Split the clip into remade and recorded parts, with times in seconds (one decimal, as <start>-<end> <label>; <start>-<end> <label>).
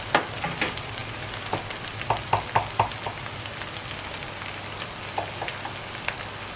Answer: 0.0-6.6 recorded